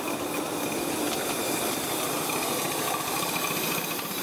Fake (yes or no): no